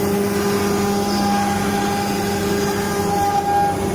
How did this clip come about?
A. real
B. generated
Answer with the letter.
A